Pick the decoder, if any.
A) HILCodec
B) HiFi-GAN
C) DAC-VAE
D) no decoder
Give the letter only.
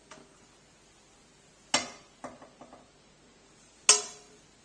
D